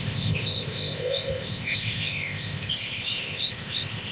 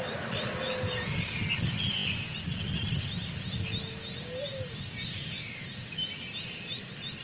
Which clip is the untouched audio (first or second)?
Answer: second